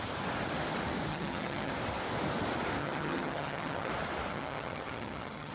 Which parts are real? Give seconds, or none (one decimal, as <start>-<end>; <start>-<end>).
0.0-1.1; 1.7-2.8; 3.9-4.3